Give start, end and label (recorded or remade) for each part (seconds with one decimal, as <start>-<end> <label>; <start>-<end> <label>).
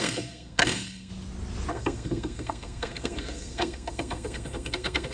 0.0-1.1 remade; 1.1-1.7 recorded; 1.7-5.1 remade